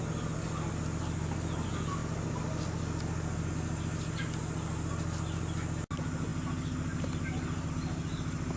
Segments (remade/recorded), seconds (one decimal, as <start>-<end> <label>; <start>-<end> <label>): 0.0-8.6 recorded